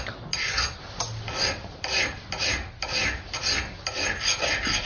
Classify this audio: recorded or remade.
recorded